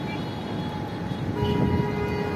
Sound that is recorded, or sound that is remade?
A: recorded